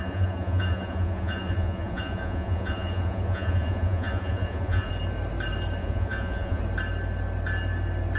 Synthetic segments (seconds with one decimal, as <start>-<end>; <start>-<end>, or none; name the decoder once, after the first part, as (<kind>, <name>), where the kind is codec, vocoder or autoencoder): 0.0-4.9 (vocoder, Vocos); 5.8-6.6